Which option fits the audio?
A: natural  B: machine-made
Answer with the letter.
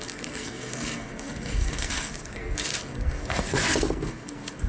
B